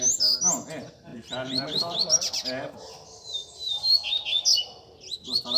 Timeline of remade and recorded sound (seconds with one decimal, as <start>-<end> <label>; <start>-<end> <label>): 0.0-5.6 recorded